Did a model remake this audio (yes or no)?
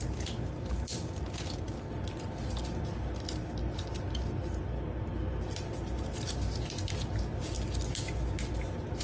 no